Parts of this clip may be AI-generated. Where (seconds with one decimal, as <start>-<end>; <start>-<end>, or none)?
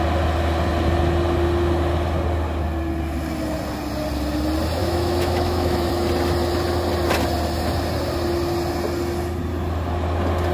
4.8-5.9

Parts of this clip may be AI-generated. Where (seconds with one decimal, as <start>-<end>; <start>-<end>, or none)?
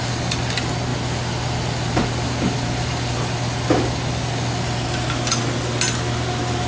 none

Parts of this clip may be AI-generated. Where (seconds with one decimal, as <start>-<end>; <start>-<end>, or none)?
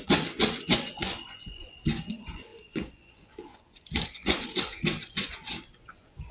0.0-6.3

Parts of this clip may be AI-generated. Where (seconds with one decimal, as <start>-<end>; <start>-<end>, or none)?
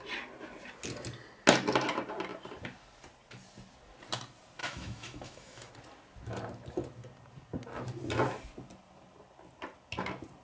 4.6-5.7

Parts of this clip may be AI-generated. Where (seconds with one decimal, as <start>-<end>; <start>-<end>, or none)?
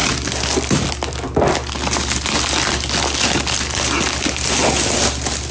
none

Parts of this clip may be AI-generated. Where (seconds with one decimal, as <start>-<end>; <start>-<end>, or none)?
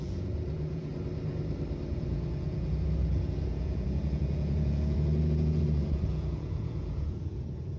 0.0-0.9; 1.9-7.8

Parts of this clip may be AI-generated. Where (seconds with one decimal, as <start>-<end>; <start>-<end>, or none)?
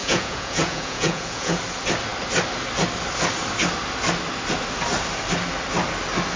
0.0-1.6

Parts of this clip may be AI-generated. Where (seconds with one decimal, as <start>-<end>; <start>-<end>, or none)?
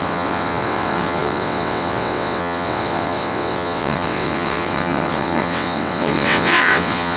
0.0-7.2